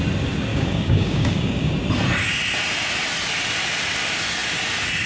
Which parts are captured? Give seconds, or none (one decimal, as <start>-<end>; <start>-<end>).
0.0-0.5; 1.7-5.1